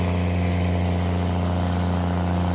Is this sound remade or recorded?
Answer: recorded